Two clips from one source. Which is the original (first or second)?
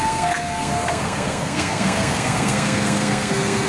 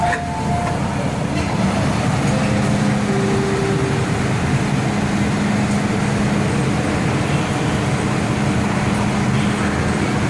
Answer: second